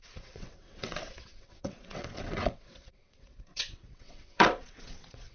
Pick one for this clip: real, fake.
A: fake